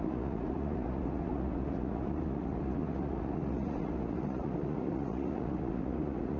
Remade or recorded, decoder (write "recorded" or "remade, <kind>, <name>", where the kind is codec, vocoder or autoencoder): remade, vocoder, Vocos